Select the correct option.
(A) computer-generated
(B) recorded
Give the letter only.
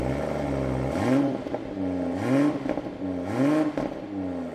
B